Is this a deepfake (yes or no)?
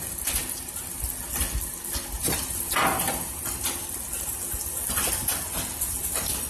no